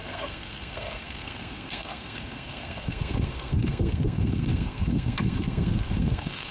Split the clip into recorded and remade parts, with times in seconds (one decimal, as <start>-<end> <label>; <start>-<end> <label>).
0.0-6.5 remade